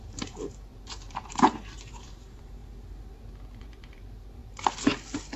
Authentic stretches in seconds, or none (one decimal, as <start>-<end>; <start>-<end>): 2.6-3.6; 4.4-5.4